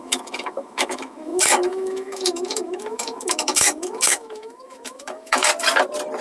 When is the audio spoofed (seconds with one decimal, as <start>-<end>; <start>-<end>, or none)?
0.0-5.5